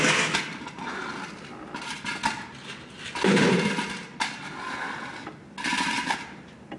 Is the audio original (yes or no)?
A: yes